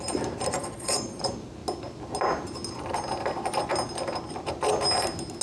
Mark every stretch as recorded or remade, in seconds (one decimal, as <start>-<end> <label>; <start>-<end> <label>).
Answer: 0.0-0.6 recorded; 0.6-1.2 remade; 1.2-5.4 recorded